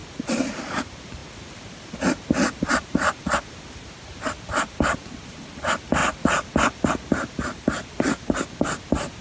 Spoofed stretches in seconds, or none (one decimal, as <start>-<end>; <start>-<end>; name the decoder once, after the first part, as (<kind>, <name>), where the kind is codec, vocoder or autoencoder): none